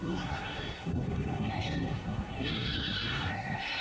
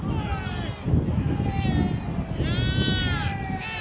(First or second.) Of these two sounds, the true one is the second